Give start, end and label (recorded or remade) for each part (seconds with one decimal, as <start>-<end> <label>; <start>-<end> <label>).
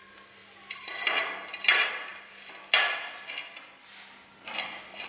0.0-5.1 recorded